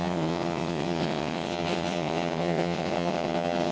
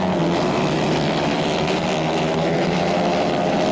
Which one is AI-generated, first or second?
first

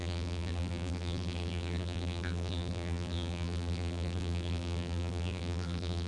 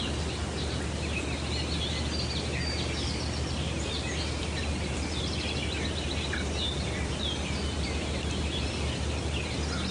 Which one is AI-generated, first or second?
first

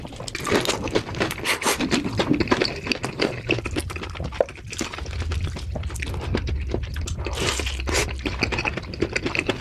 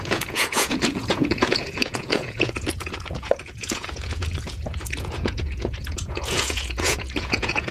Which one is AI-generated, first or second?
second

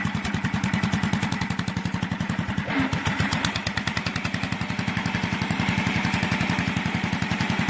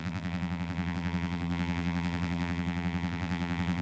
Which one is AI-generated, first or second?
second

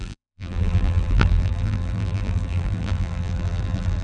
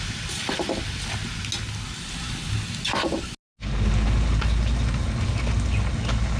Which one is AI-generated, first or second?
first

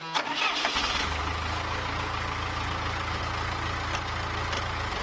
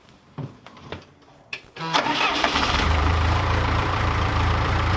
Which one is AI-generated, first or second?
second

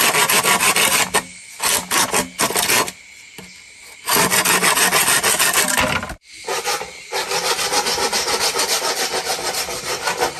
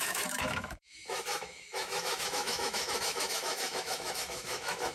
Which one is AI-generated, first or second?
second